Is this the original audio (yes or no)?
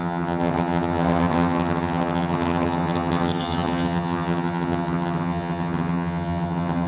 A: no